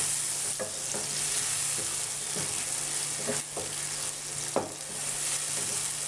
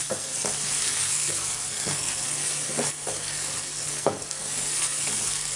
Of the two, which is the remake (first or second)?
second